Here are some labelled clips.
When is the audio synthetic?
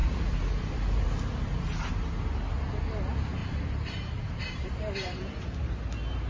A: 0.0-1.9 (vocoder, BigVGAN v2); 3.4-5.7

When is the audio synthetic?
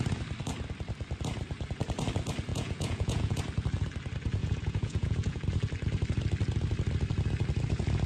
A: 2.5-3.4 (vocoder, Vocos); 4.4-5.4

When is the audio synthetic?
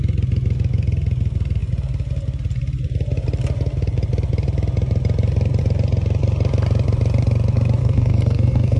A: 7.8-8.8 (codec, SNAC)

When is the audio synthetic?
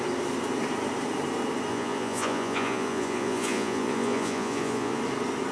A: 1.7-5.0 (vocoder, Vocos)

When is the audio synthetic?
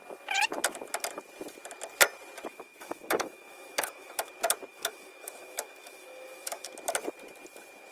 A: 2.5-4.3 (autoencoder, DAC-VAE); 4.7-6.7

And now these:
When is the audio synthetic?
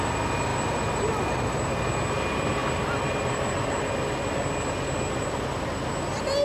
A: none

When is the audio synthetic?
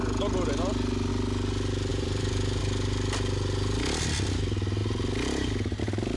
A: 1.9-2.6 (vocoder, BigVGAN v2)